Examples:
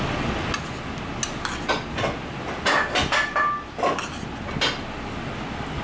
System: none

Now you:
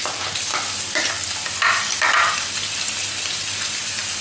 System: none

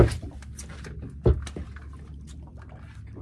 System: none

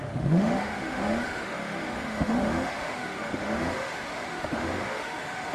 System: autoencoder, DAC-VAE